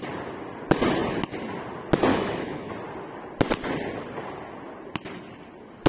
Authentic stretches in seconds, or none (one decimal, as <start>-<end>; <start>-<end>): 0.0-2.1; 2.7-5.9